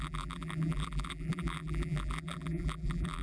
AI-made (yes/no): yes